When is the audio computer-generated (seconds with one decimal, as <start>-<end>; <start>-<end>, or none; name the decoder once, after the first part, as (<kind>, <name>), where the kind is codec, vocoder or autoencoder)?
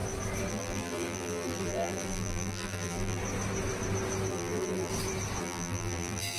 0.5-3.2 (vocoder, BigVGAN v2); 4.3-4.9; 5.4-6.4